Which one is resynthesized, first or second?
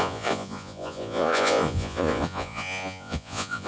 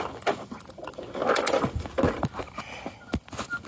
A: first